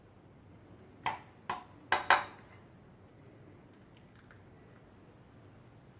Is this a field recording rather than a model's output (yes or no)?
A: yes